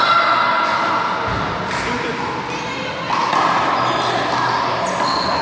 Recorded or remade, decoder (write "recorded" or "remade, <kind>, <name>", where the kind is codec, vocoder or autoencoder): recorded